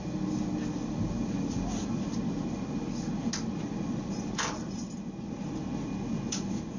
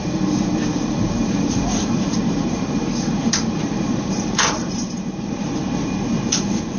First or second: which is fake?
second